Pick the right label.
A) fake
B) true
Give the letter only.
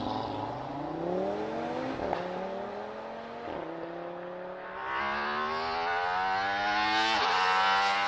B